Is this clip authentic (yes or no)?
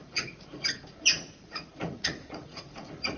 no